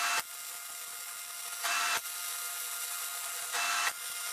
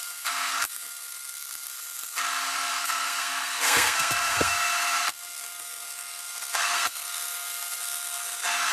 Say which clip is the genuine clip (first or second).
first